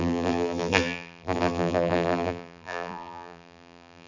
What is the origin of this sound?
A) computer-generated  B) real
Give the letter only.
A